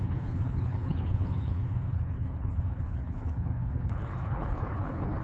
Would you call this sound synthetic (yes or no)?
yes